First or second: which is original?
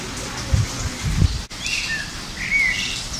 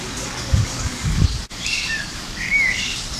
first